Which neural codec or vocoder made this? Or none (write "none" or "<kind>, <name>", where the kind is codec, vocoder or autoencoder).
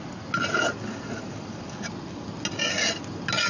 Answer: none